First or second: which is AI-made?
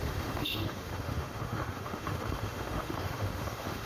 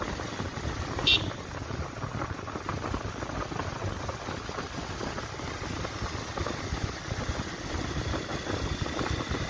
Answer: first